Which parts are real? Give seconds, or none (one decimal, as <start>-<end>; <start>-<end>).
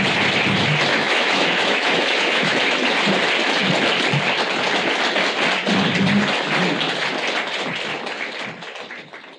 0.0-0.9; 2.6-9.4